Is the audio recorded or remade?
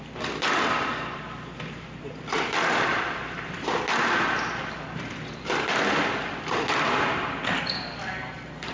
remade